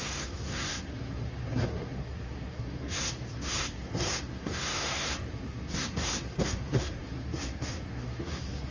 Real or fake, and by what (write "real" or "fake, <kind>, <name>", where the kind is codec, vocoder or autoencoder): fake, codec, SNAC